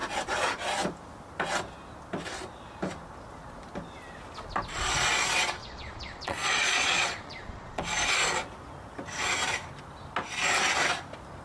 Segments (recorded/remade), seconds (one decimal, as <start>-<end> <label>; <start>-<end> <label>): 0.0-5.6 recorded; 5.6-7.8 remade; 7.8-11.4 recorded